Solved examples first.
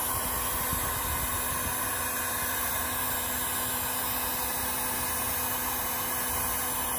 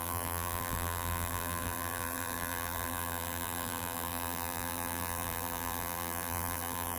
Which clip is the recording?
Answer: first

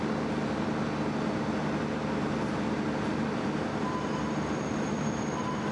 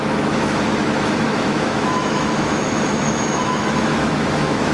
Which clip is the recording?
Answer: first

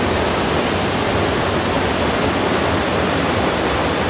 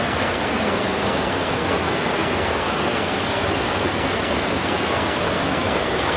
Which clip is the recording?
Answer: first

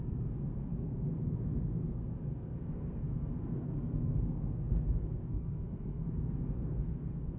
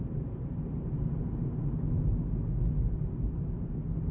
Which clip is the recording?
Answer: second